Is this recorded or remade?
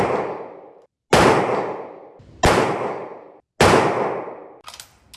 recorded